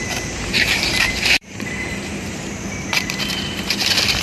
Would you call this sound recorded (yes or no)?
no